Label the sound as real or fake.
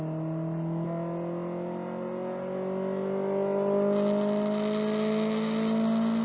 real